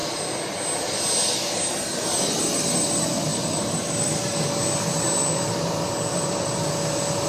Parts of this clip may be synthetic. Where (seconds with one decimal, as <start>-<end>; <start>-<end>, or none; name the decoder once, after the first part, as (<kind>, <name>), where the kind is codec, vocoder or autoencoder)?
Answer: 3.3-4.5 (vocoder, BigVGAN v2); 6.1-6.7